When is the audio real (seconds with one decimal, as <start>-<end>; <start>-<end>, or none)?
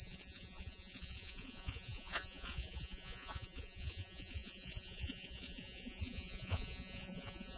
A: none